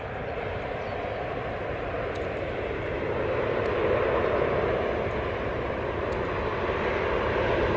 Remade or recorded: recorded